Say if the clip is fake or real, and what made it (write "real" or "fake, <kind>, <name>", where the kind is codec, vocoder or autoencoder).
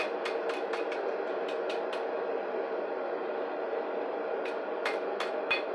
real